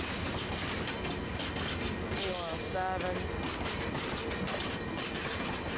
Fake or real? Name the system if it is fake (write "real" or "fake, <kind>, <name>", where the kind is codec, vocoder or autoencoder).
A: real